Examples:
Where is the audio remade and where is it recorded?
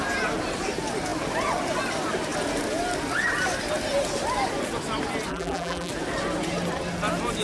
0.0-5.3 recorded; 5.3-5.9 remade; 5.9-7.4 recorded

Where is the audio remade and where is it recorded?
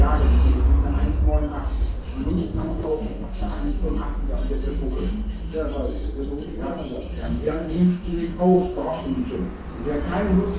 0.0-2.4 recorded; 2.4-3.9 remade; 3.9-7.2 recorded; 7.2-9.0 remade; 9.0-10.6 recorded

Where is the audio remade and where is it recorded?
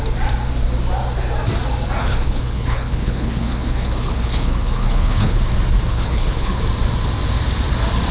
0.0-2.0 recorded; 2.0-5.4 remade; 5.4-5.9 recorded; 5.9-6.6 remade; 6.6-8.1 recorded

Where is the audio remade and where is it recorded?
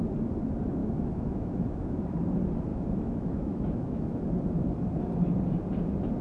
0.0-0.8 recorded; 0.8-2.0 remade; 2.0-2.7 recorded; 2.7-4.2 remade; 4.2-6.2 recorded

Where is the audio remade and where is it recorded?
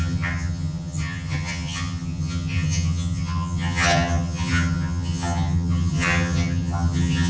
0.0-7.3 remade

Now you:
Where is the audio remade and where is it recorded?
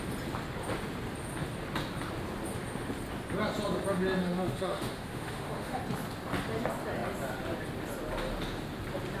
0.0-4.2 recorded; 4.2-5.8 remade; 5.8-9.2 recorded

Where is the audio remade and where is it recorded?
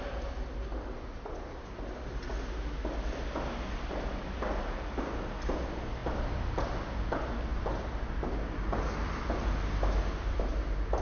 0.0-11.0 recorded